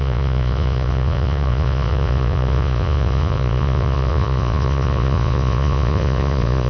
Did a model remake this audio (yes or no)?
yes